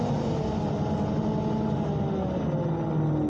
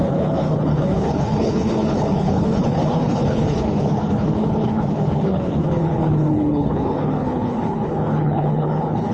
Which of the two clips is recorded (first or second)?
first